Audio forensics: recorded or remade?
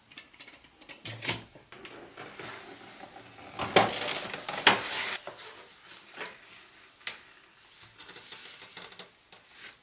recorded